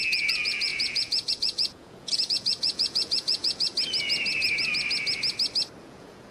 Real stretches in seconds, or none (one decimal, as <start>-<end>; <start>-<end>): 3.7-5.8